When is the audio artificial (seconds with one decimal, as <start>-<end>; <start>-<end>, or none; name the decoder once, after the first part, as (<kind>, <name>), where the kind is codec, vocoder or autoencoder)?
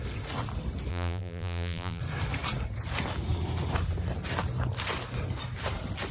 0.9-2.0 (vocoder, BigVGAN v2)